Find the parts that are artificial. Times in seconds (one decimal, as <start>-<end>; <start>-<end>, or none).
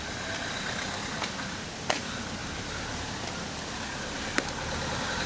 none